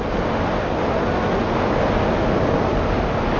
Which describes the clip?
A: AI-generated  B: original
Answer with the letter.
B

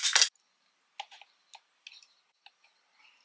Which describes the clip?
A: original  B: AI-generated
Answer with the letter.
A